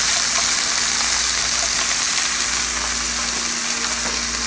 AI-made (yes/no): no